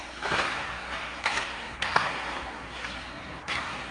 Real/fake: fake